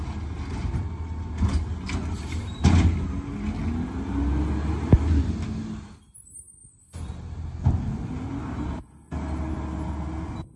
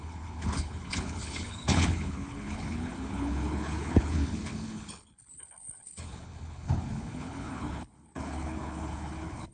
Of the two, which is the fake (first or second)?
second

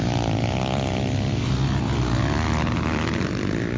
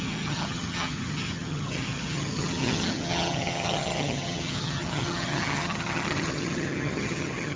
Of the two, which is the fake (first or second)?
second